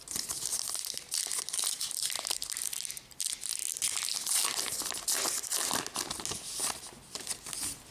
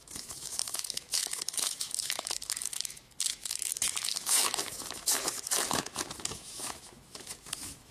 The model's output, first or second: second